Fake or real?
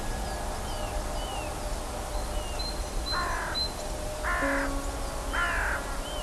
real